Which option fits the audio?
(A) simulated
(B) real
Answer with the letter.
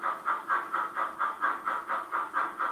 B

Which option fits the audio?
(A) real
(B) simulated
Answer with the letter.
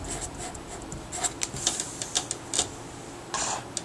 A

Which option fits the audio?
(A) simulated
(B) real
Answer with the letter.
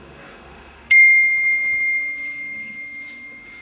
A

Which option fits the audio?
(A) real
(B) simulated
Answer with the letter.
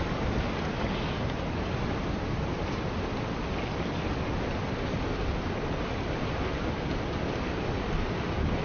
A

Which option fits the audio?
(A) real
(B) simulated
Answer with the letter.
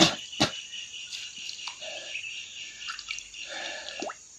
A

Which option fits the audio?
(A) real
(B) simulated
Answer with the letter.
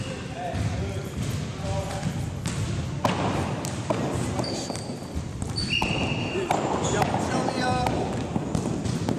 A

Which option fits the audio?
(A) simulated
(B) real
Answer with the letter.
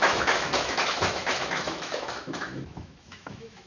A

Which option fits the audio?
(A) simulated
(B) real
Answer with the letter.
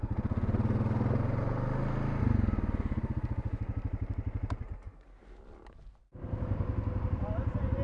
B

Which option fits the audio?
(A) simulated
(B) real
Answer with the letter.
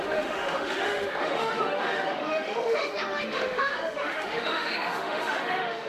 A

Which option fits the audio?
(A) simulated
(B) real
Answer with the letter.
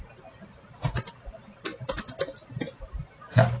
B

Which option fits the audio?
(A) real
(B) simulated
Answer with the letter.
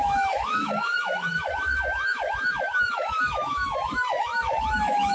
B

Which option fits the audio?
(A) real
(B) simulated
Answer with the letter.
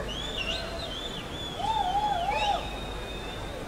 A